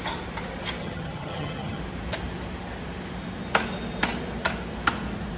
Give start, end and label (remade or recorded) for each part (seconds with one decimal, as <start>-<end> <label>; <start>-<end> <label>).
0.0-0.8 recorded; 0.8-1.8 remade; 1.8-5.4 recorded